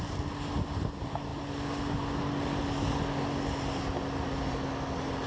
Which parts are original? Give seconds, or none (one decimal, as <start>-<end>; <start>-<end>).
0.0-5.3